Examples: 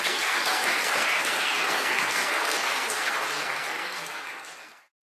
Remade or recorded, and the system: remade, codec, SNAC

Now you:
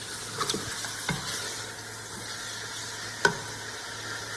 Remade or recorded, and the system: recorded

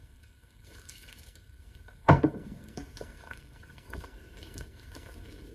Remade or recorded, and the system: remade, codec, SNAC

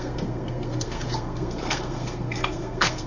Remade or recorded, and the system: remade, codec, SNAC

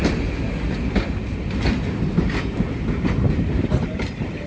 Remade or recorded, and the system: recorded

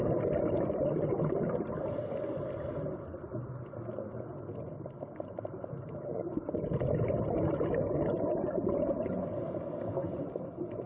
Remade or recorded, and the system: recorded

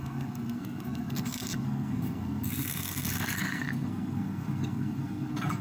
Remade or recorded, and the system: remade, codec, SNAC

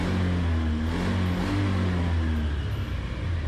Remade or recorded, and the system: recorded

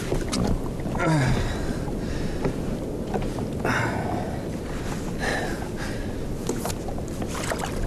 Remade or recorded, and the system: recorded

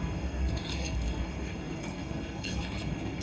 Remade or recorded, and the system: remade, codec, SNAC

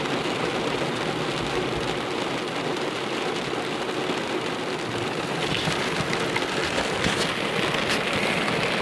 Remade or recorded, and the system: recorded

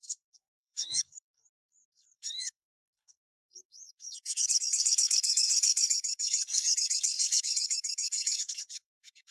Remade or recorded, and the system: remade, codec, SNAC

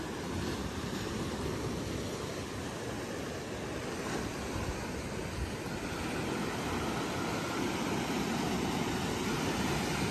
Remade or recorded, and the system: recorded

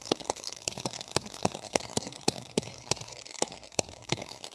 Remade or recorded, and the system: remade, codec, SNAC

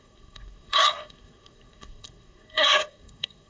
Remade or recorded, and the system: remade, codec, SNAC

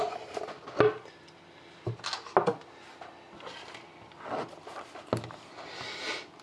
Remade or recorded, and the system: recorded